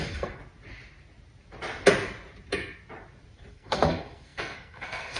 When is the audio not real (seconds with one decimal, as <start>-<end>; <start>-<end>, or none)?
0.0-0.4; 3.5-5.2